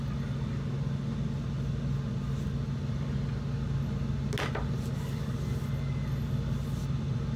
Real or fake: real